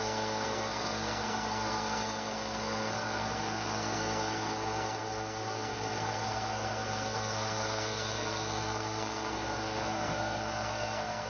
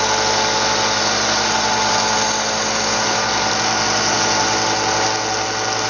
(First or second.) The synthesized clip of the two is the first